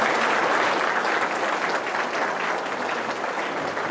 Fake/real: real